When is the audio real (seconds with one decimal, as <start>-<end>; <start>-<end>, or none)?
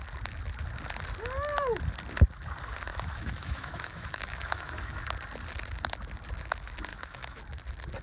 0.0-2.9; 5.1-6.9; 7.4-8.0